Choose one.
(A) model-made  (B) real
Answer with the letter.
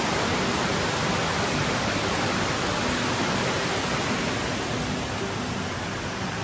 B